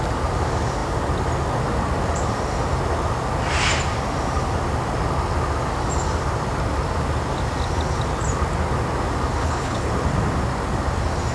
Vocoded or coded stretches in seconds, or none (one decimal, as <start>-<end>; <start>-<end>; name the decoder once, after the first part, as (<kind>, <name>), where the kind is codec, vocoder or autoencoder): 9.4-9.9 (codec, HILCodec)